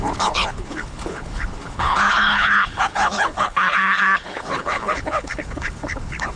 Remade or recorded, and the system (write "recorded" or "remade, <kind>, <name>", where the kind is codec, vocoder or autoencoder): remade, codec, HILCodec